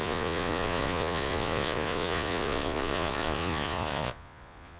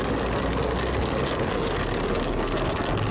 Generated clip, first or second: first